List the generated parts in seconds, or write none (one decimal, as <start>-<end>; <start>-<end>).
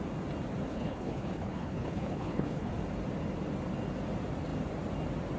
0.7-2.7